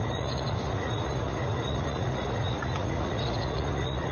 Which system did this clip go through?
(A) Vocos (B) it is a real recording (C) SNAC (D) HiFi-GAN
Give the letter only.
A